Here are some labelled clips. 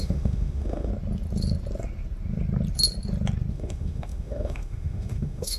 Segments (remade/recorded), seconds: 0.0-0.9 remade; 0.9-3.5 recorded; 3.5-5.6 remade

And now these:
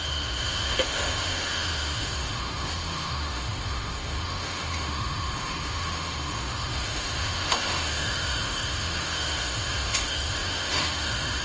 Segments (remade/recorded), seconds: 0.0-11.4 remade

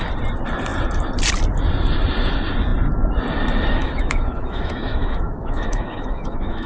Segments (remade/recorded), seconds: 0.0-3.8 recorded; 3.8-6.7 remade